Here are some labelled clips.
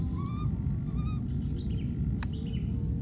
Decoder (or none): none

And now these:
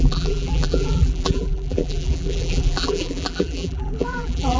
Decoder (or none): vocoder, BigVGAN v2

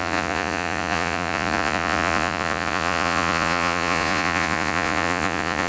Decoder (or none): vocoder, Vocos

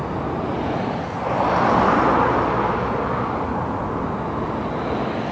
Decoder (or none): none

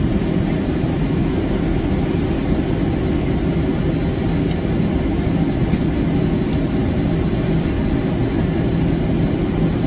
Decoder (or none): none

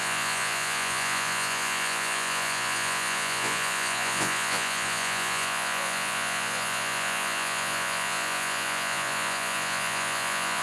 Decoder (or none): vocoder, Vocos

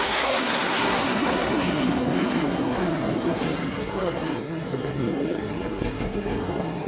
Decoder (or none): codec, SNAC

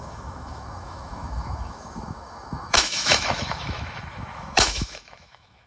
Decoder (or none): autoencoder, DAC-VAE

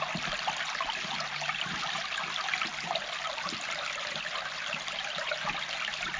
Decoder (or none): none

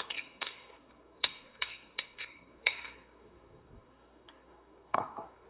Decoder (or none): codec, SNAC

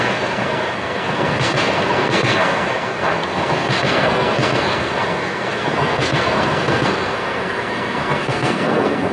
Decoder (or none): codec, SNAC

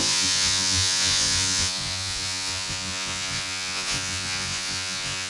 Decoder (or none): vocoder, Vocos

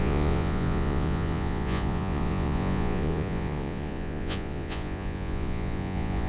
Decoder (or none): vocoder, Vocos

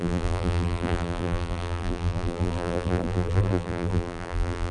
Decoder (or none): vocoder, BigVGAN v2